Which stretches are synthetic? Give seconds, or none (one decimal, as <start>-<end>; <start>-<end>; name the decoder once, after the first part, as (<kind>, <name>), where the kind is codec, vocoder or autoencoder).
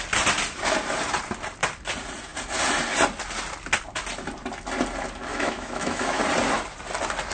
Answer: 5.3-6.2 (autoencoder, DAC-VAE)